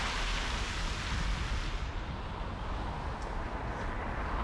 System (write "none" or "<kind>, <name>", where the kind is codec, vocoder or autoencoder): none